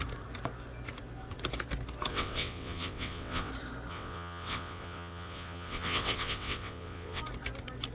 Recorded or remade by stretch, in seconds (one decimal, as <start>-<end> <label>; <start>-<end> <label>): 0.0-2.1 recorded; 2.1-3.5 remade; 3.5-3.9 recorded; 3.9-7.2 remade; 7.2-7.9 recorded